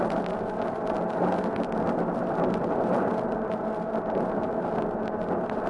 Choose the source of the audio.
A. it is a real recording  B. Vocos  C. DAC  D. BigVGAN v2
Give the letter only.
A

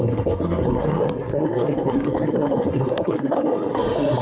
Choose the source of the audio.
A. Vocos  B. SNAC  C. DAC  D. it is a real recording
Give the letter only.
B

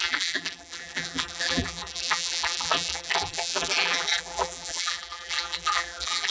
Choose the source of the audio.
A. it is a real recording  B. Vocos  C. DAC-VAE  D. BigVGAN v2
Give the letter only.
D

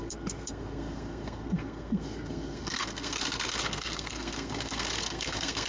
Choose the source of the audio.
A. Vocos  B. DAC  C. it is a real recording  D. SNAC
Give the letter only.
D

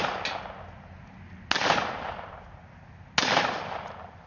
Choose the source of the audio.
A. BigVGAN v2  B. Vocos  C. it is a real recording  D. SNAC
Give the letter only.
C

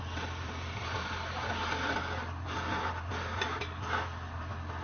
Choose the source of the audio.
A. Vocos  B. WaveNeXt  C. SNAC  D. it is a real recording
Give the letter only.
D